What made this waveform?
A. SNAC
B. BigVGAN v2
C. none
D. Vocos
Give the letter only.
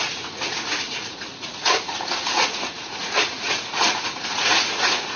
D